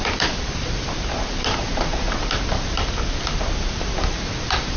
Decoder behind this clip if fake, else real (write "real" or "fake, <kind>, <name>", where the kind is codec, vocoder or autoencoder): fake, vocoder, BigVGAN v2